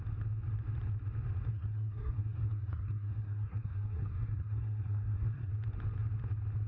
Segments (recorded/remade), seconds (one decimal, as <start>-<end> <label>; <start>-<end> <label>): 0.0-1.5 recorded; 1.5-5.5 remade; 5.5-6.7 recorded